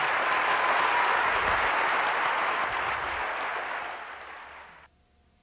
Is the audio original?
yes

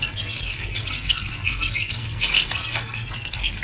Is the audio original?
no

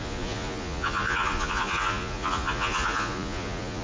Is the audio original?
no